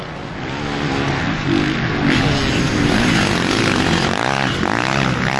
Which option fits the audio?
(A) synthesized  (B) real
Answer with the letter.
B